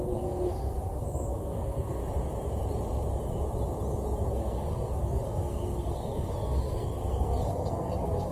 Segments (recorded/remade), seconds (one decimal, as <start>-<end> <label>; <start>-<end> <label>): 0.0-2.0 remade; 2.0-4.3 recorded; 4.3-8.3 remade